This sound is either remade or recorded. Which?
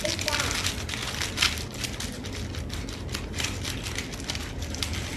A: recorded